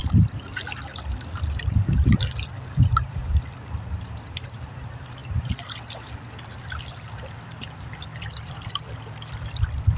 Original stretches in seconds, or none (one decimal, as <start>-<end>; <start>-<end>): 0.0-1.8; 5.2-6.6